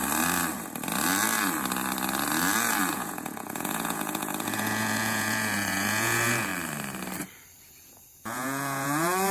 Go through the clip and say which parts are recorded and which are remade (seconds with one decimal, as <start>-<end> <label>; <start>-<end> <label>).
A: 0.0-2.9 recorded; 2.9-6.5 remade; 6.5-7.7 recorded; 7.7-9.3 remade